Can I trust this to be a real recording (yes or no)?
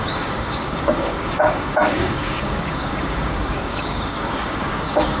no